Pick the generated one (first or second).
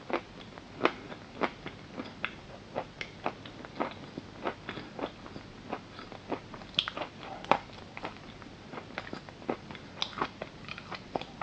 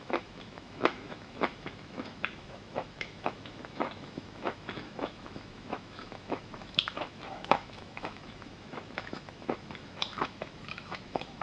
second